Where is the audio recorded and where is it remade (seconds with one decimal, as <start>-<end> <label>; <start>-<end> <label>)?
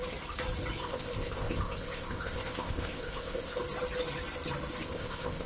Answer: 0.0-0.8 recorded; 0.8-3.6 remade; 3.6-4.8 recorded; 4.8-5.5 remade